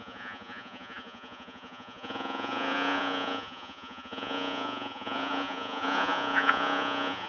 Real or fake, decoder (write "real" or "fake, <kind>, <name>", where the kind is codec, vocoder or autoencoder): fake, vocoder, Vocos